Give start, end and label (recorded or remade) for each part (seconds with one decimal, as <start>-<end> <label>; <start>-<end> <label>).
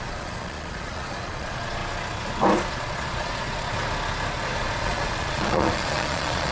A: 0.0-1.8 remade; 1.8-2.7 recorded; 2.7-3.7 remade; 3.7-4.6 recorded; 4.6-6.5 remade